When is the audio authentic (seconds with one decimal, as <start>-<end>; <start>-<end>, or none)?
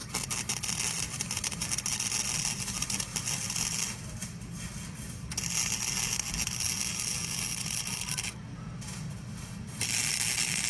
0.0-10.7